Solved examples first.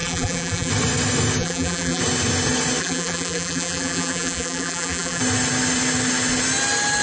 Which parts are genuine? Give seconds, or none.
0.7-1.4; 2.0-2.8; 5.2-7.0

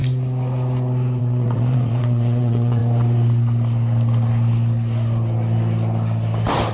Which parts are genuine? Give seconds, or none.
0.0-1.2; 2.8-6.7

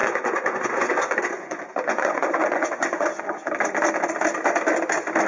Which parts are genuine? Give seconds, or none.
3.2-5.3